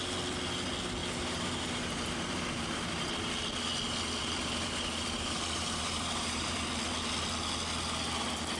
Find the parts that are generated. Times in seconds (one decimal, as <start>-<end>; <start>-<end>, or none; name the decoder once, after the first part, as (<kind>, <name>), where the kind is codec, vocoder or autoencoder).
1.0-3.3 (vocoder, BigVGAN v2); 4.2-6.6